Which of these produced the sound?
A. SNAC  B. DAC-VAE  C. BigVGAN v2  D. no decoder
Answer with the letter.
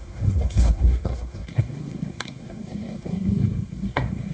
A